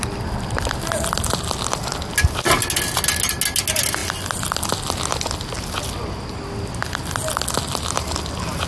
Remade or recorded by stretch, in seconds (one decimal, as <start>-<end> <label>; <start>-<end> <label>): 0.0-8.7 recorded